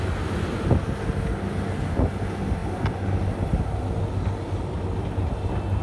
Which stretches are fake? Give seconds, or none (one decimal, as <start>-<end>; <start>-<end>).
none